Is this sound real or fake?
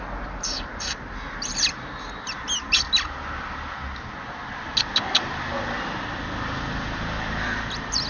real